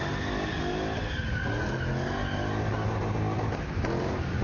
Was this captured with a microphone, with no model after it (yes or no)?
yes